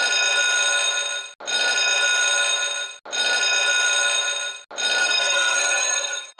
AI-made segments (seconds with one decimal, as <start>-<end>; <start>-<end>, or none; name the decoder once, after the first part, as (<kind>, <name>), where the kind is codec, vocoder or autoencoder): 5.0-6.4 (codec, SNAC)